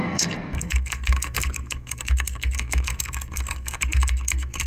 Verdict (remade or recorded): remade